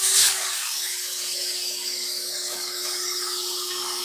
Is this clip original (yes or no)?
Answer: no